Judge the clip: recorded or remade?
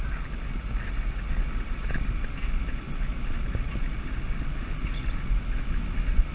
recorded